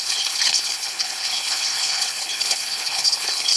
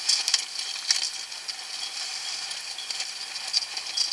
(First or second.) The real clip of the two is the second